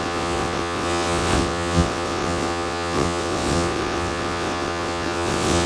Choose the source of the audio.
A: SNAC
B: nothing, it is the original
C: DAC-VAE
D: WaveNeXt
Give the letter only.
D